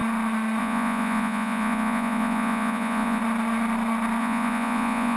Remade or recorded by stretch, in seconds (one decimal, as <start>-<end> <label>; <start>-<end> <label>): 0.0-0.6 recorded; 0.6-3.2 remade; 3.2-4.2 recorded; 4.2-5.2 remade